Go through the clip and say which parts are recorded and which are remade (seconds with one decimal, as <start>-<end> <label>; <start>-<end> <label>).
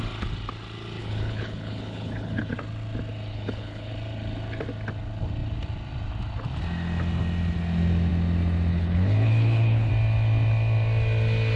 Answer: 0.0-1.0 recorded; 1.0-2.5 remade; 2.5-3.3 recorded; 3.3-3.9 remade; 3.9-8.7 recorded; 8.7-9.9 remade; 9.9-11.6 recorded